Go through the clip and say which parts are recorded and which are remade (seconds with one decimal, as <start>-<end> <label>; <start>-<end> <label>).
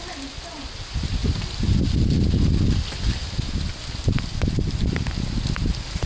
0.0-6.1 recorded